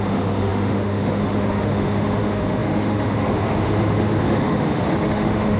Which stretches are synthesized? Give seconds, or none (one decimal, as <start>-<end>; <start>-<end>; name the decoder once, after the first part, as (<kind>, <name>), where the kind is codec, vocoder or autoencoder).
0.0-5.6 (autoencoder, DAC-VAE)